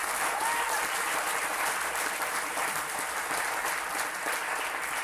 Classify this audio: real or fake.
real